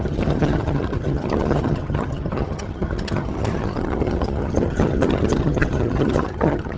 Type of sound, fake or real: fake